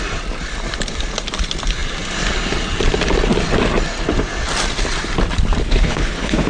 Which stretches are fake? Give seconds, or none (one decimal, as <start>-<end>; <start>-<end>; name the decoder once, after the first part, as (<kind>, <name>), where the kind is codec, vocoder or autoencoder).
5.6-6.5 (codec, HILCodec)